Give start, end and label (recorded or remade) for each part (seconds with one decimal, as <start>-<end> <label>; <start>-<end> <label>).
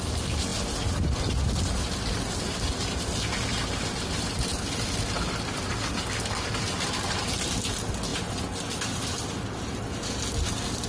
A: 0.0-10.9 recorded